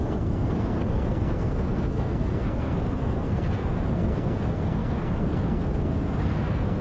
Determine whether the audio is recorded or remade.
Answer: remade